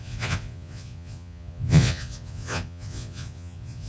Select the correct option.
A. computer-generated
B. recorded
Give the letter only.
A